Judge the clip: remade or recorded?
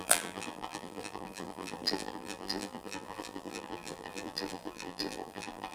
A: remade